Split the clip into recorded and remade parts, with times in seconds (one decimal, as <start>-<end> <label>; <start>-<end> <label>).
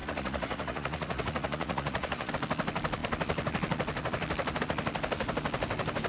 0.0-2.3 remade; 2.3-6.1 recorded